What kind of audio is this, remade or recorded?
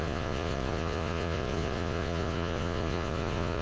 remade